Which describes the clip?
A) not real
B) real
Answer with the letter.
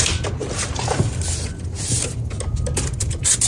B